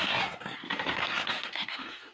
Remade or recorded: remade